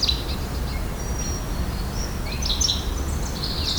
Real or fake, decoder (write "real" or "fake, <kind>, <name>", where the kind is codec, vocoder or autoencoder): real